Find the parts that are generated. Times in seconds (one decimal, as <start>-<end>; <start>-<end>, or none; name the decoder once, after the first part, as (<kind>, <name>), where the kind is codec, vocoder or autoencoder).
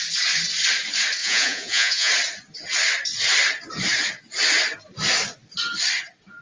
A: 1.2-2.1 (vocoder, Vocos)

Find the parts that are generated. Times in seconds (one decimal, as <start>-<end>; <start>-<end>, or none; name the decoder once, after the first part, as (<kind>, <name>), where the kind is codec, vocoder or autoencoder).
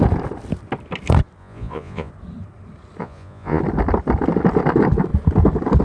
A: 1.4-2.1 (vocoder, Vocos); 3.0-3.6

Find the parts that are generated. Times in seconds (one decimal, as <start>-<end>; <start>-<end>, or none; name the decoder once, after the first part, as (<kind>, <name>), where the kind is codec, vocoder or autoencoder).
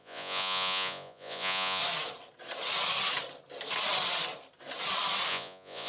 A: 0.0-1.8 (vocoder, Vocos); 5.3-5.9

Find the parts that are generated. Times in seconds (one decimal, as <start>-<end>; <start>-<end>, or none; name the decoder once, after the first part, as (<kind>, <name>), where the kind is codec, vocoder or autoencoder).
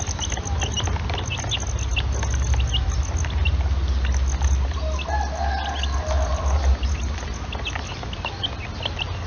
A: none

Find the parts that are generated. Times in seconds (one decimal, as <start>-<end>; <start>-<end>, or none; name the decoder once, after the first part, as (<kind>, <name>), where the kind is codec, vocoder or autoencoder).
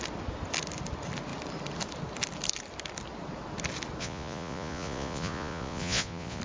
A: 4.0-6.4 (vocoder, Vocos)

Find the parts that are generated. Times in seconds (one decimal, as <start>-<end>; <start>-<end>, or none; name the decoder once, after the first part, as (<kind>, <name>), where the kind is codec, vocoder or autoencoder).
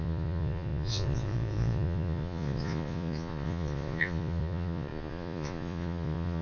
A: 0.0-6.4 (vocoder, Vocos)